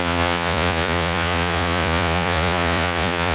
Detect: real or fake fake